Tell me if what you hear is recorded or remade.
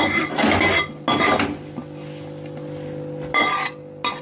recorded